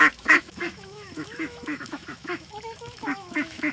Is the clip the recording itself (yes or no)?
no